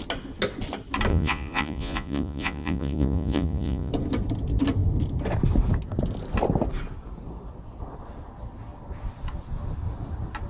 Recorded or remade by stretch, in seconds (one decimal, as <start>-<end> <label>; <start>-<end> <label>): 0.0-1.1 recorded; 1.1-3.9 remade; 3.9-10.5 recorded